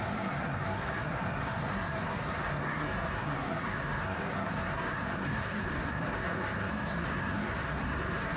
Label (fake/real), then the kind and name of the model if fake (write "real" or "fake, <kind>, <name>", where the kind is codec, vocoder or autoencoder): fake, codec, SNAC